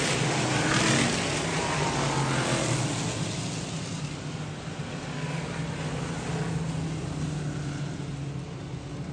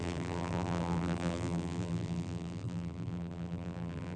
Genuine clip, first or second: first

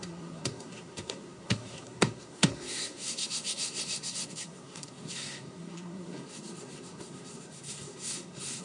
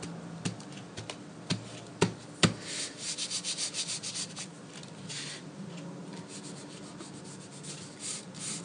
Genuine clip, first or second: second